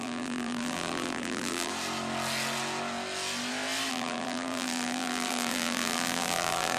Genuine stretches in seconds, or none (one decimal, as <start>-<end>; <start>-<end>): 1.7-3.9